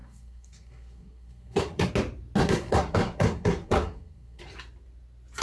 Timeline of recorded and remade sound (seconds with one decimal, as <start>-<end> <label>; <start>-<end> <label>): 0.0-1.9 remade; 1.9-2.4 recorded; 2.4-4.4 remade; 4.4-5.4 recorded